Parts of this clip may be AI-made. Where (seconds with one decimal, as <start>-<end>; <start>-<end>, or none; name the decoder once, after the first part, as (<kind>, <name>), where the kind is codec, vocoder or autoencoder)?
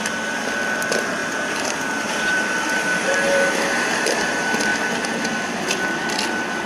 1.2-4.3 (vocoder, BigVGAN v2)